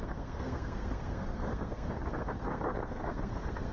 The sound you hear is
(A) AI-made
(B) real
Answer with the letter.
A